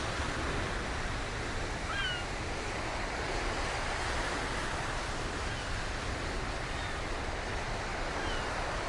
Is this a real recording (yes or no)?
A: yes